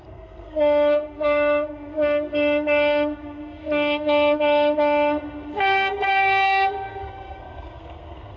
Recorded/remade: remade